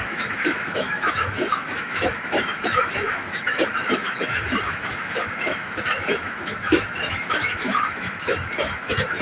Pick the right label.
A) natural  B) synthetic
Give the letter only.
B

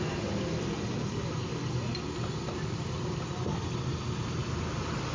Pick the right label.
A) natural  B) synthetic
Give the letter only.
A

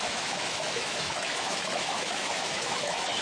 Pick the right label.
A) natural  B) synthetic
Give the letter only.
B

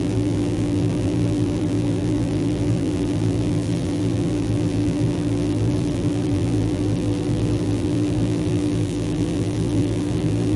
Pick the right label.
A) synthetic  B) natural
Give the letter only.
A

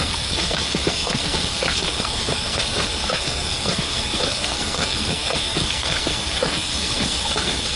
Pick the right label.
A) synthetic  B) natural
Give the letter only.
A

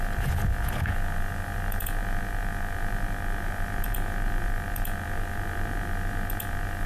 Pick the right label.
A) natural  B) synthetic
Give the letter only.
B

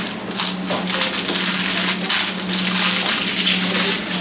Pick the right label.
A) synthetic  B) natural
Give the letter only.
B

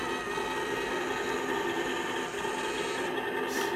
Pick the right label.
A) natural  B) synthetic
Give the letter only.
A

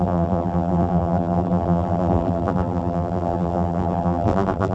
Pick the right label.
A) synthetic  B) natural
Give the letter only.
A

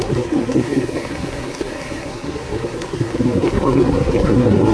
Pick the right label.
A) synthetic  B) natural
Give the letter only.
A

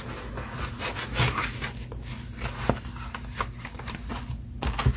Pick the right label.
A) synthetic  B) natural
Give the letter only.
B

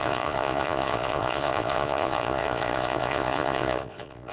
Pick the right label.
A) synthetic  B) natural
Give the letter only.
A